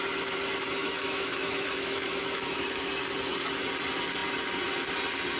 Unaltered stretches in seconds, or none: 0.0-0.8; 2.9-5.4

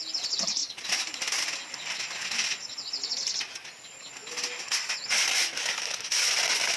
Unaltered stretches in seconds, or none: 0.0-6.8

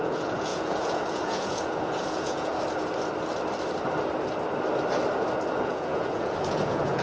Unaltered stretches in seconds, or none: 2.5-5.5

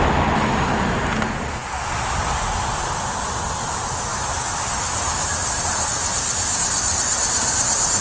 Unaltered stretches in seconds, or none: 0.0-8.0

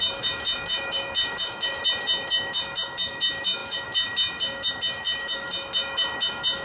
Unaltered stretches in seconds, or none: none